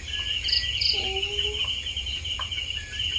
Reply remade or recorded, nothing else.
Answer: recorded